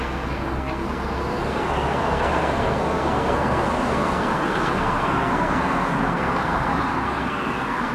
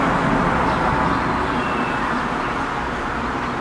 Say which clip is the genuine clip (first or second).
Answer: second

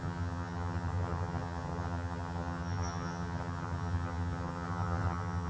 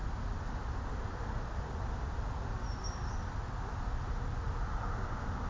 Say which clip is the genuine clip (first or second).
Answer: second